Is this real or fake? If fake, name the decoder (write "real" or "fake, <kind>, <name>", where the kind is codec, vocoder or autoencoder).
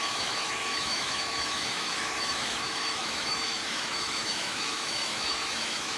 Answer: fake, autoencoder, DAC-VAE